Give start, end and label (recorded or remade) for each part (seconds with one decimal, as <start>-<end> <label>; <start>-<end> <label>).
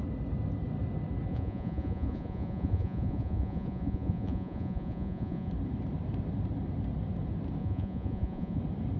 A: 0.0-1.3 recorded; 1.3-5.5 remade; 5.5-7.6 recorded; 7.6-8.6 remade; 8.6-9.0 recorded